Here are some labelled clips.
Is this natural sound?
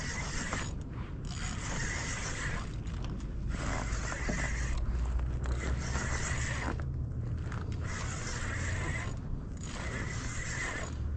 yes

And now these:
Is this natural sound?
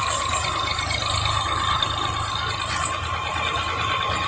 yes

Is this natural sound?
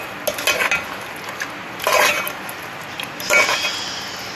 yes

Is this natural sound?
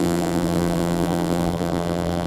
no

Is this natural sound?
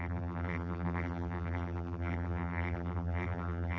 no